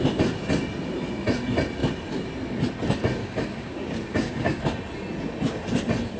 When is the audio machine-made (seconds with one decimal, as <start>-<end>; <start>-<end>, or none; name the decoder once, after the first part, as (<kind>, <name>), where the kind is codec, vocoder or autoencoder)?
3.2-4.6 (codec, DAC)